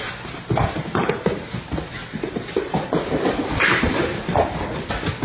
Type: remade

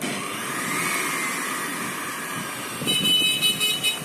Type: recorded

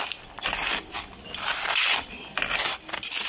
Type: recorded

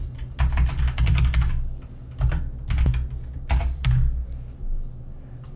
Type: recorded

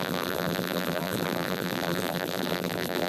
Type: remade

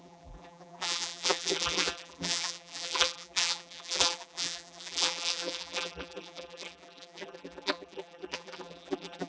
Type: remade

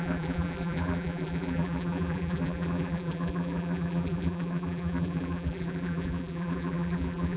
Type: remade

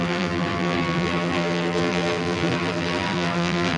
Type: remade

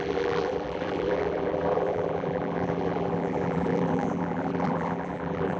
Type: remade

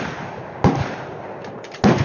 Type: recorded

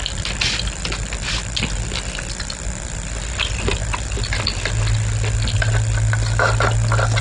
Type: recorded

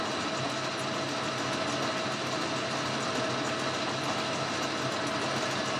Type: recorded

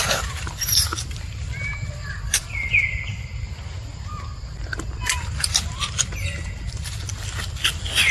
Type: recorded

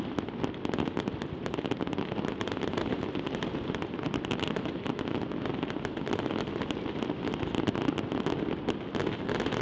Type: recorded